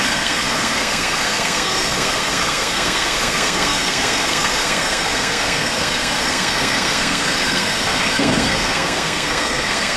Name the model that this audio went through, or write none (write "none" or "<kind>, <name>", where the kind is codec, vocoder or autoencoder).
codec, SNAC